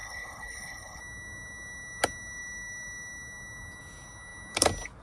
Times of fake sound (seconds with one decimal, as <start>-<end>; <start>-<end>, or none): 0.0-1.0